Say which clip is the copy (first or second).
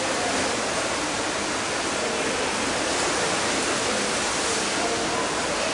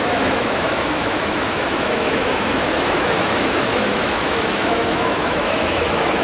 second